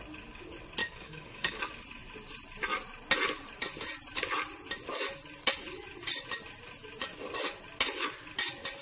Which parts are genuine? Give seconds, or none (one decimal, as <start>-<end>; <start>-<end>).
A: 0.0-0.8; 1.6-8.8